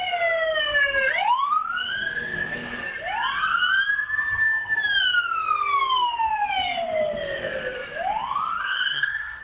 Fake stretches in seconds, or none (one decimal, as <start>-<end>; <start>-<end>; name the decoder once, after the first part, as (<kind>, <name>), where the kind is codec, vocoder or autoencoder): 8.6-9.4 (codec, SNAC)